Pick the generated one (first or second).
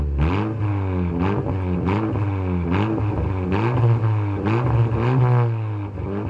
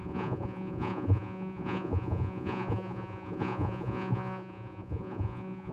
second